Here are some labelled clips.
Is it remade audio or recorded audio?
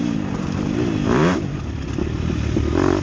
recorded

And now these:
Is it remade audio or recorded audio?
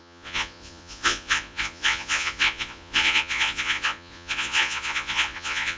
remade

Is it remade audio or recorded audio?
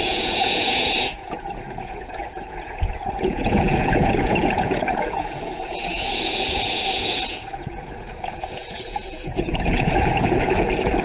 remade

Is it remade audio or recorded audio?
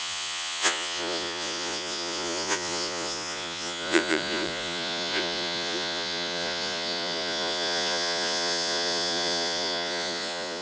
remade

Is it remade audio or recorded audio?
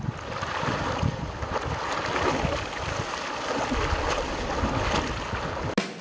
recorded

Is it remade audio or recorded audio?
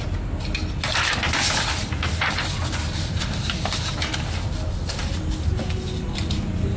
recorded